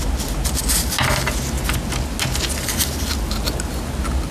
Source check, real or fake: real